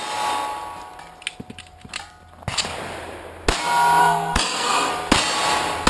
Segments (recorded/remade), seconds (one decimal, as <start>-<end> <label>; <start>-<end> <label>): 0.0-4.0 recorded; 4.0-4.9 remade; 4.9-5.9 recorded